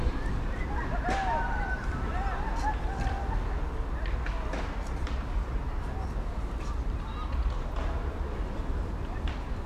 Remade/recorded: recorded